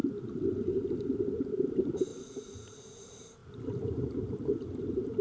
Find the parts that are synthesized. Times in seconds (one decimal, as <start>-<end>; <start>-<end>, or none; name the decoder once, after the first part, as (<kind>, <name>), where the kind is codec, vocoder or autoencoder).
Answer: 1.7-2.1 (vocoder, BigVGAN v2); 2.7-3.4; 4.0-5.2